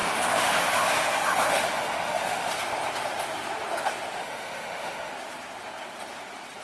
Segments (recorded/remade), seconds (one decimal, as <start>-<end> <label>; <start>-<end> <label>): 0.0-2.5 remade; 2.5-4.2 recorded; 4.2-5.1 remade; 5.1-6.6 recorded